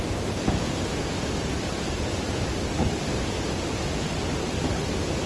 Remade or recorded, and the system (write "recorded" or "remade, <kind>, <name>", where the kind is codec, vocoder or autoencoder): recorded